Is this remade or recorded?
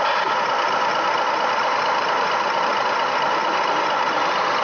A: recorded